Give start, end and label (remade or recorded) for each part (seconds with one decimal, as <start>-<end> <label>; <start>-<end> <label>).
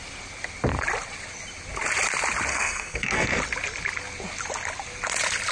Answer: 0.0-2.5 recorded; 2.5-3.4 remade; 3.4-5.5 recorded